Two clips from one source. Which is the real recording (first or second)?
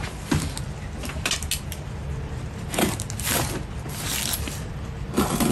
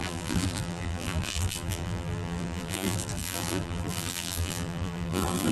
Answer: first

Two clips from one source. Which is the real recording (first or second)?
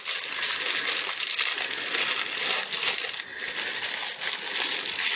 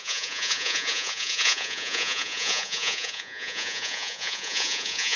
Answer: first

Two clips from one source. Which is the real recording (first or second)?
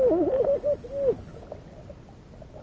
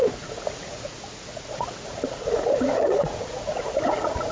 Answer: first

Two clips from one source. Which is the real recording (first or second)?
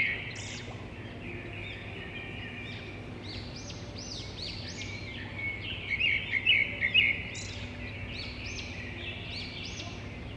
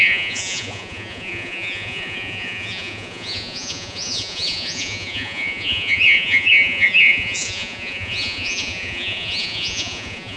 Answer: first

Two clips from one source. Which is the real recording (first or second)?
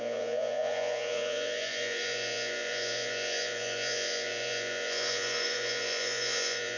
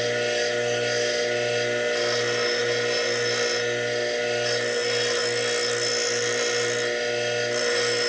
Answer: second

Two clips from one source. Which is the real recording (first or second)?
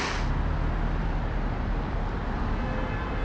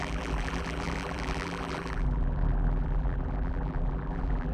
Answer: first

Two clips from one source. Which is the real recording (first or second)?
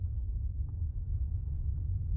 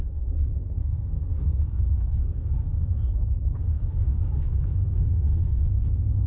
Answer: first